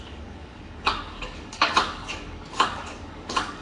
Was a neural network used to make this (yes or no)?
yes